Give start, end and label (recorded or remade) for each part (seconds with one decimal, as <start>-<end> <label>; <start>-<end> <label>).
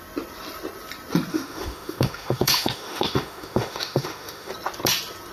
0.0-1.3 recorded; 1.3-4.5 remade; 4.5-5.3 recorded